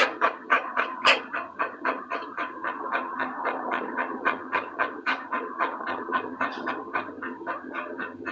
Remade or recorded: remade